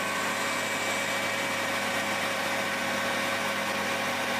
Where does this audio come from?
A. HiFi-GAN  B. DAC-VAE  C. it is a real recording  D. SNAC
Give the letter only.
C